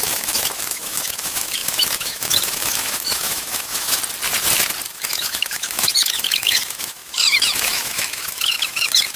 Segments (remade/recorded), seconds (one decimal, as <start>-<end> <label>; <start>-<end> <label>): 0.0-4.0 remade; 4.0-4.9 recorded; 4.9-9.2 remade